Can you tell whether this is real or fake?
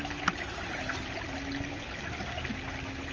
real